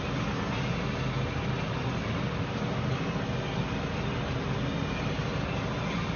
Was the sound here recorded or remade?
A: recorded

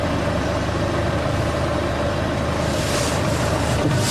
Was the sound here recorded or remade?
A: remade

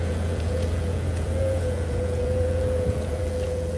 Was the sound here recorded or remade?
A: remade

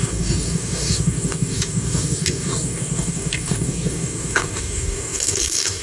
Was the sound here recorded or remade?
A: remade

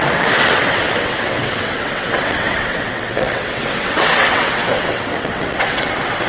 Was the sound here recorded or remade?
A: remade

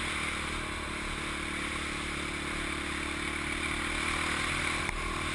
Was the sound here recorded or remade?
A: recorded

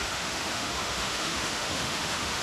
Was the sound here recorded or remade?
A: remade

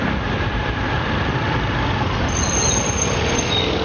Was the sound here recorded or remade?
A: recorded